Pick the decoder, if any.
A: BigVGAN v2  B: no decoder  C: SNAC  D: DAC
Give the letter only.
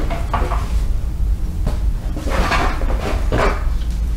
B